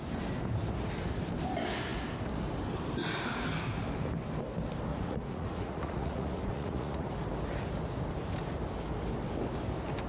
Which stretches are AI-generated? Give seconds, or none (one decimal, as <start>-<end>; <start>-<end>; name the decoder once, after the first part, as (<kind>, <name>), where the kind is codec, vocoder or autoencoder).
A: 4.9-7.1 (vocoder, Vocos)